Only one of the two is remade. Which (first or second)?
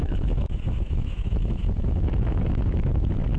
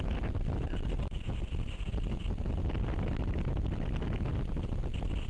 first